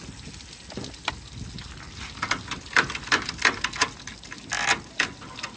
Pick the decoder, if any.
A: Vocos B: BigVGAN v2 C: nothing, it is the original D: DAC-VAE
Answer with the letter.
C